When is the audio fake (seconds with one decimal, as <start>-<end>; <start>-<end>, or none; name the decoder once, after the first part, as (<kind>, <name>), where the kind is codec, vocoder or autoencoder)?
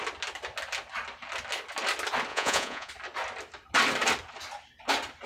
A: 2.3-2.9 (vocoder, Vocos)